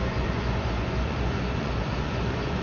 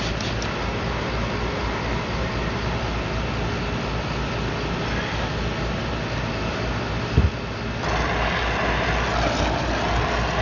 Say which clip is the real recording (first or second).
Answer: second